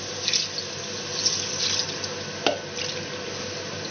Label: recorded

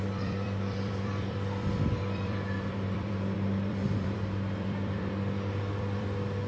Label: remade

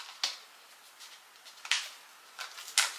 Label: recorded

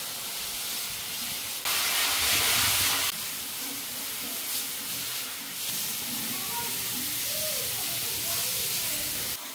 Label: recorded